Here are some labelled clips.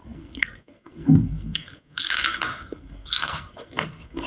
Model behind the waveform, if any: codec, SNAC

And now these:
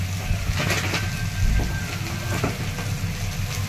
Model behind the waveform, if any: none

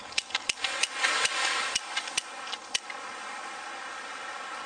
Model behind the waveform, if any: none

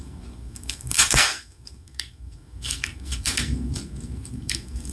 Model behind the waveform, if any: codec, SNAC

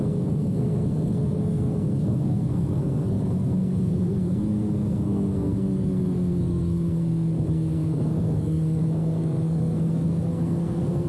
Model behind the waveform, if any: codec, SNAC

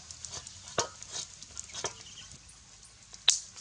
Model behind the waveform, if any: none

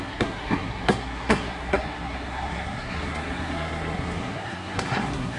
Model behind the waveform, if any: codec, SNAC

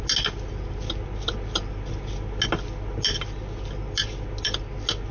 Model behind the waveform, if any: none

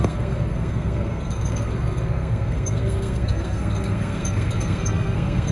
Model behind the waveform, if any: codec, SNAC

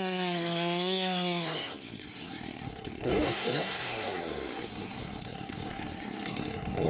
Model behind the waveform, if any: codec, SNAC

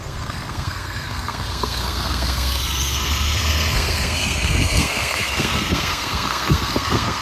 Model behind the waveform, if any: codec, SNAC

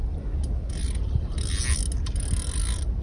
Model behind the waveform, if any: none